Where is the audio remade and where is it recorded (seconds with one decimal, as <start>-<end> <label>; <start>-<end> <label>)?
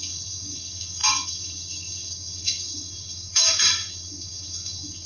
0.0-5.1 remade